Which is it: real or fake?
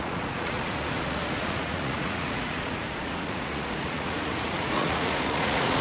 fake